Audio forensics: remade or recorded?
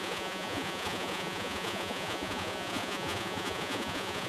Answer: remade